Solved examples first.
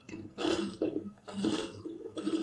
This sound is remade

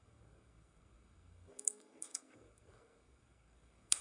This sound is remade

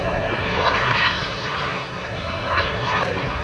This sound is remade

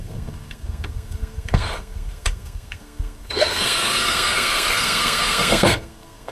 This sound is remade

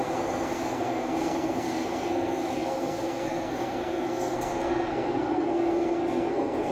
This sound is remade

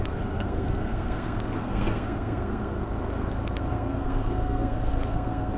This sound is remade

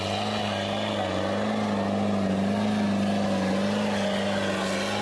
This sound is recorded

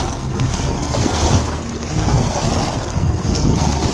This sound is remade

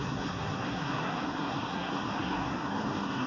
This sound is remade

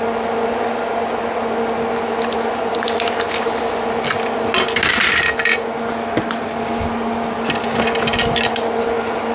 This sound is recorded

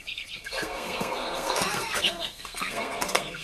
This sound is remade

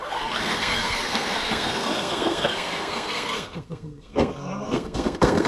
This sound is remade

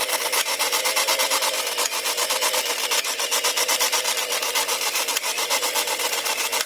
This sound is recorded